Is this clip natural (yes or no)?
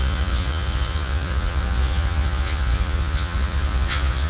no